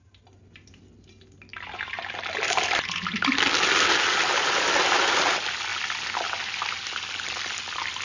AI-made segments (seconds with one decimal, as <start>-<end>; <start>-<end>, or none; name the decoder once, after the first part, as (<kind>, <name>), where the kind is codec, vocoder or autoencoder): none